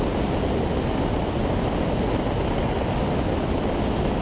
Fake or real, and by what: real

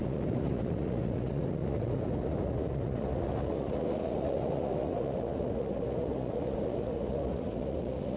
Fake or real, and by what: fake, vocoder, Vocos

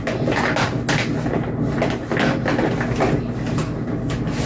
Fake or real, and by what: real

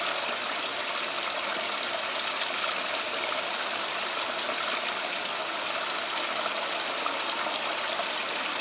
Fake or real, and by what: real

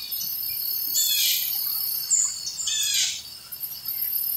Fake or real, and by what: real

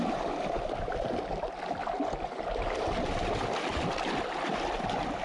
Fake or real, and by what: real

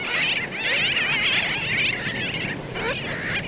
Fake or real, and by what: real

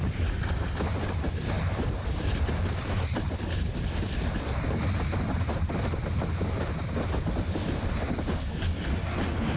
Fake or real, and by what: real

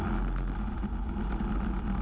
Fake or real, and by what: real